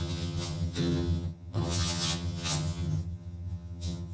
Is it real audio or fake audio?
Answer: fake